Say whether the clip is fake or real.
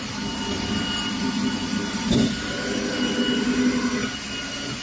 real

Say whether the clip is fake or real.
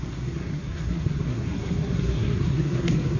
fake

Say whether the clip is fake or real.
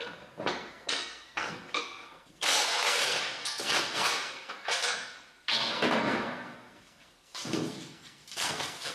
fake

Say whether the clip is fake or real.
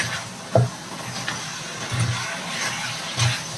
real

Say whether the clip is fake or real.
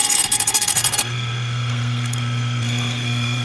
fake